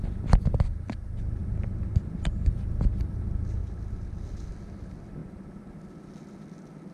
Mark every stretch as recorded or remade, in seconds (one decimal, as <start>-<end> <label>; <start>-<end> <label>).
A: 0.0-1.4 recorded; 1.4-1.9 remade; 1.9-6.9 recorded